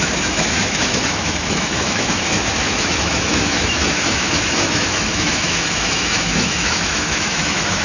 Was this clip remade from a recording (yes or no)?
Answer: yes